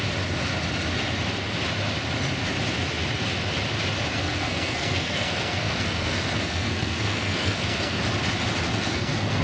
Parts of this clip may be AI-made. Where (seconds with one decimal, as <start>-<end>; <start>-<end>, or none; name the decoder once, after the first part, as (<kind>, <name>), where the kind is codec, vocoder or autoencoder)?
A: 4.1-8.0 (codec, SNAC); 8.7-9.4